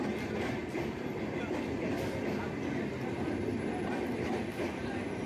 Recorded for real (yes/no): yes